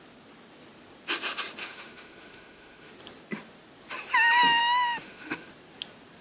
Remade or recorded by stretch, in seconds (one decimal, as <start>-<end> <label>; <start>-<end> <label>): 0.0-1.6 recorded; 1.6-2.9 remade; 2.9-4.6 recorded; 4.6-5.5 remade; 5.5-6.2 recorded